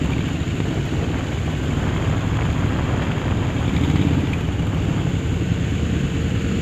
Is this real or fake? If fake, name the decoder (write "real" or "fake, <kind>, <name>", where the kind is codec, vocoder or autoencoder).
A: real